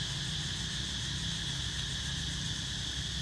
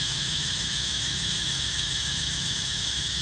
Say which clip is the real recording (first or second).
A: first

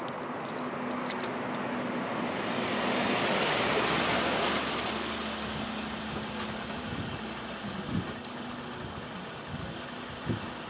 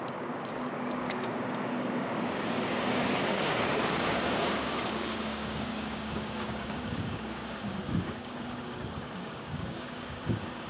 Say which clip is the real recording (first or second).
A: first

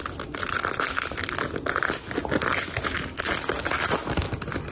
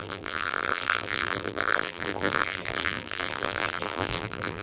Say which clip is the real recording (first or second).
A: first